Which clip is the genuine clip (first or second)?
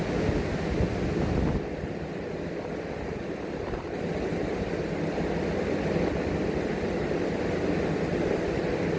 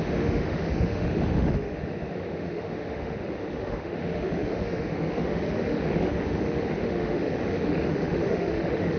first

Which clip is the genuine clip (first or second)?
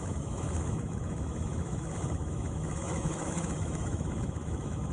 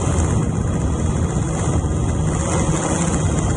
second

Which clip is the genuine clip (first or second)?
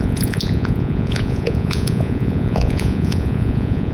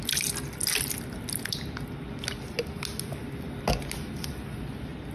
second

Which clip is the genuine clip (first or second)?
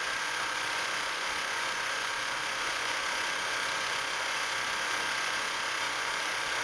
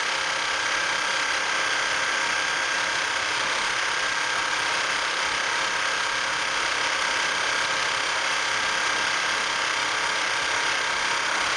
second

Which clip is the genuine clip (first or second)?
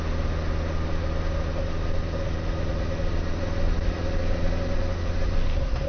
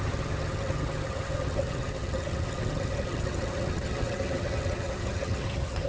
first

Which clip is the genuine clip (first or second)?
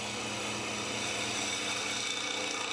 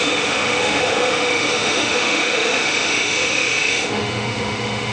first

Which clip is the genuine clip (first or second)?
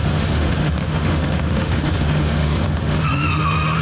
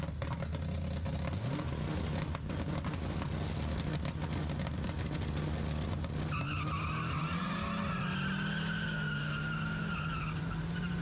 second